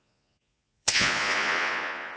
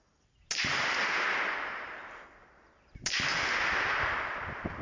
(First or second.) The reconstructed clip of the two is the first